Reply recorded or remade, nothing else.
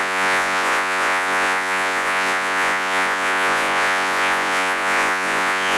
remade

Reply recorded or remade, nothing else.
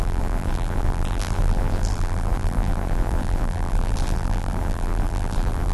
remade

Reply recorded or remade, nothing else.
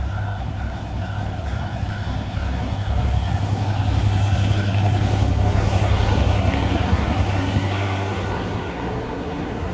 remade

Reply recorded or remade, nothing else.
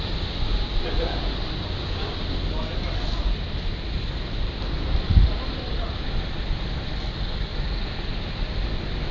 recorded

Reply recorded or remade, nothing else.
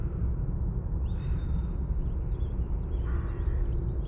recorded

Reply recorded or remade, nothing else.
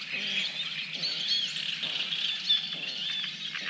recorded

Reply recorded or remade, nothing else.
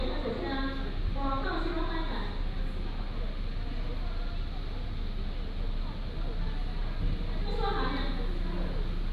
recorded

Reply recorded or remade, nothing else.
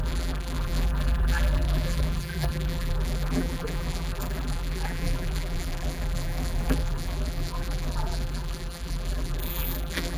remade